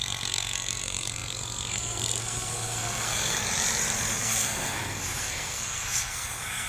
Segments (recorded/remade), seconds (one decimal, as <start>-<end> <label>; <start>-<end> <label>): 0.0-3.4 remade; 3.4-4.1 recorded; 4.1-6.7 remade